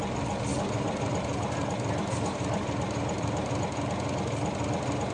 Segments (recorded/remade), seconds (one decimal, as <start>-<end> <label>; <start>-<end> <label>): 0.0-0.5 recorded; 0.5-3.6 remade; 3.6-5.1 recorded

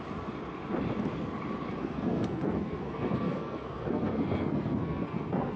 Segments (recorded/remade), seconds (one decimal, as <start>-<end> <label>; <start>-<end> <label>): 0.0-1.8 recorded; 1.8-5.6 remade

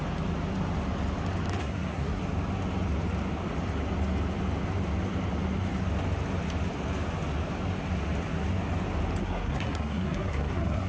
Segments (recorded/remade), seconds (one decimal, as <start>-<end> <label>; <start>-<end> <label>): 0.0-1.6 recorded; 1.6-2.2 remade; 2.2-9.2 recorded; 9.2-10.9 remade

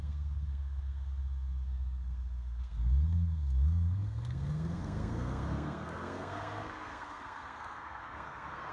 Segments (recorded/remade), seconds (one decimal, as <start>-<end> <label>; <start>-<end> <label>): 0.0-8.7 remade

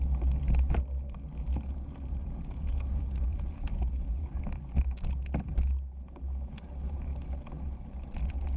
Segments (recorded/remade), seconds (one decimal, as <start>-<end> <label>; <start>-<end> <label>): 0.0-2.2 recorded; 2.2-4.4 remade; 4.4-8.6 recorded